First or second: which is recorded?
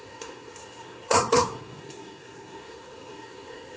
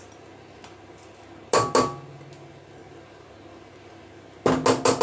second